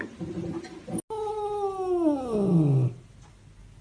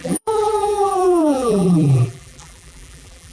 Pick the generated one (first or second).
second